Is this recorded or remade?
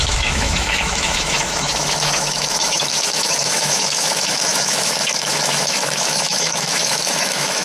remade